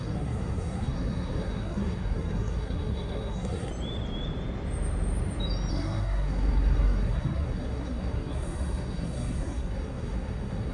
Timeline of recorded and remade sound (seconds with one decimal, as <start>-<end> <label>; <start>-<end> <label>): 0.0-3.7 remade; 3.7-5.7 recorded; 5.7-10.7 remade